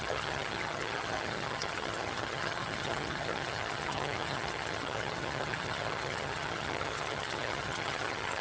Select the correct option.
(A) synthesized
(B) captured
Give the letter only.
A